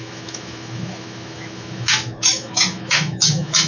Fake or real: fake